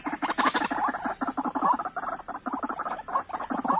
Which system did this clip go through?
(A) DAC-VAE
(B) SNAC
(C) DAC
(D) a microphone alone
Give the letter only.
D